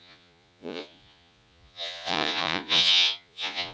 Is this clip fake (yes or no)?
yes